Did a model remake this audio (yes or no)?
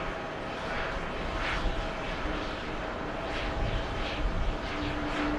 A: no